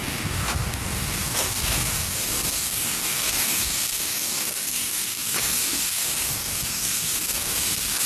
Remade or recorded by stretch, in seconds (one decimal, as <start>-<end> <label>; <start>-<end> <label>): 0.0-8.1 remade